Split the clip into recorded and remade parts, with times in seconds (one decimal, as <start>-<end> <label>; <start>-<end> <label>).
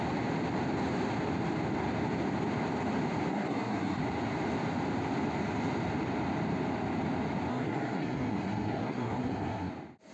0.0-3.3 recorded; 3.3-4.0 remade; 4.0-7.5 recorded; 7.5-9.7 remade; 9.7-10.1 recorded